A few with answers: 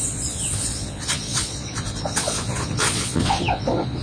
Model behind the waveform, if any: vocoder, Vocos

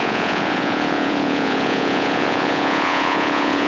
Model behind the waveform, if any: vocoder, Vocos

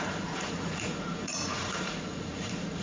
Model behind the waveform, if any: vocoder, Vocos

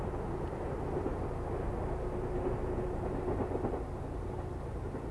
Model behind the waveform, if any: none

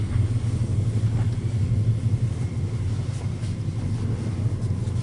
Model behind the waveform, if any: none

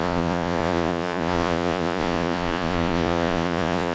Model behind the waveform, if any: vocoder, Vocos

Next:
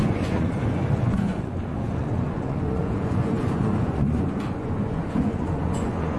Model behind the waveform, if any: vocoder, Vocos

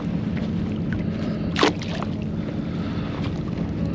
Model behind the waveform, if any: none